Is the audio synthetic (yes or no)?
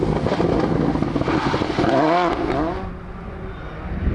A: no